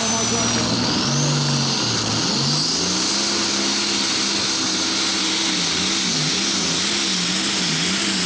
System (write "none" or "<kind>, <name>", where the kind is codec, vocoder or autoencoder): none